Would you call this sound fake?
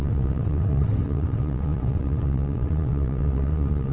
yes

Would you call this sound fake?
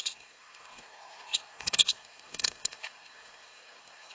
yes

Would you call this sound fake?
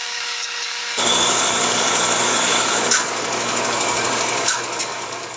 yes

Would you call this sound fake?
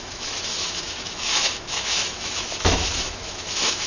yes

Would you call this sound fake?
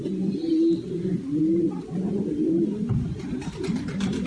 no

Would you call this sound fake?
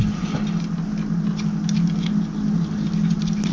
no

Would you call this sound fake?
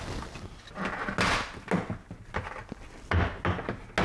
no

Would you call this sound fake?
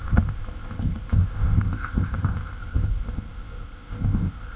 yes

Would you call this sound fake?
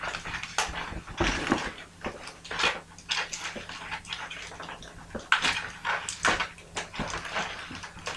no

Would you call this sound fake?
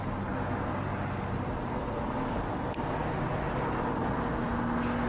no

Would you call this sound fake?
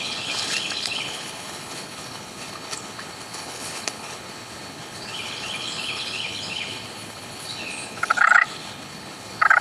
yes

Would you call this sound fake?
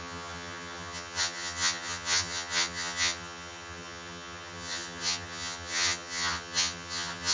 yes